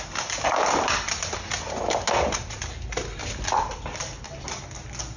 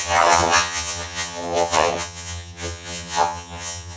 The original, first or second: first